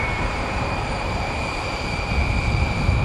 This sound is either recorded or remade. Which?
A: remade